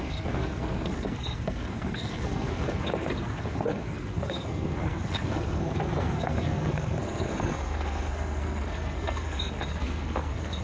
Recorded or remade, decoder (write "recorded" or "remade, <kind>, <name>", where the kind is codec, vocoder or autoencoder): remade, codec, SNAC